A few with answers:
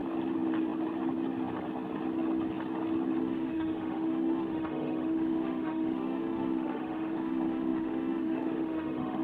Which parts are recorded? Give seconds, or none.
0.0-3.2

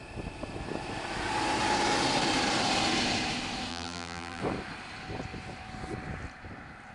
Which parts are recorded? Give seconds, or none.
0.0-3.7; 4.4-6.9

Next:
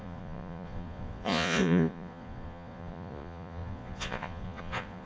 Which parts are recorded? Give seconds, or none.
none